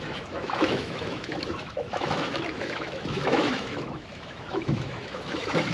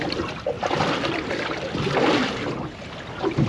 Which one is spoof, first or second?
first